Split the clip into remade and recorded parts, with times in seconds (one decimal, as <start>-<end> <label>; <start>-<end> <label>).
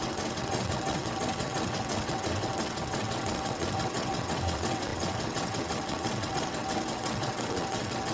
0.0-8.1 remade